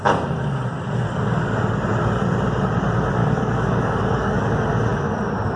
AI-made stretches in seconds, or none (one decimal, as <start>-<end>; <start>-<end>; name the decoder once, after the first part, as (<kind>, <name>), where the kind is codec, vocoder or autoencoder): 3.2-4.5 (codec, DAC)